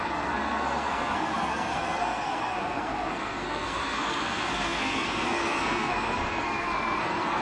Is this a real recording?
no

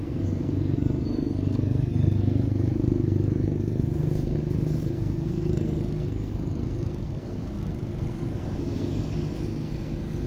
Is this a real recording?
no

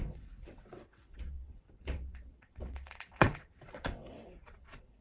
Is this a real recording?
no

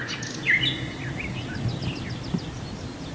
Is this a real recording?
yes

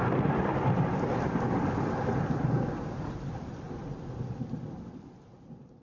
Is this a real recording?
yes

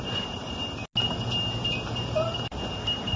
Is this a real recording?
yes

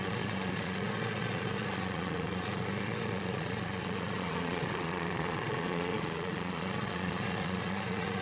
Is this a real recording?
no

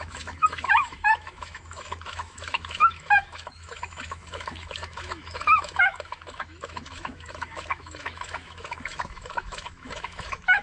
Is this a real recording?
no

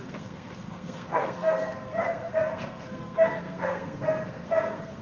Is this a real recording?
no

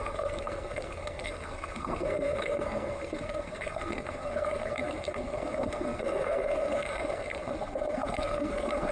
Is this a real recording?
no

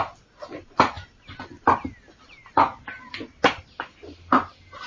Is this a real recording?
yes